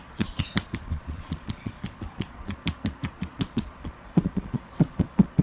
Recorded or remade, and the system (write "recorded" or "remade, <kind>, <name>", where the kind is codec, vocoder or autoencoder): remade, vocoder, Vocos